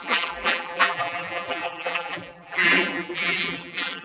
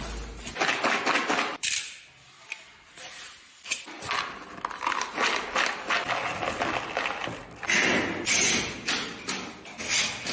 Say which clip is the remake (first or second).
first